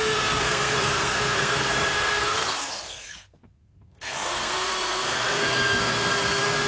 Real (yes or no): no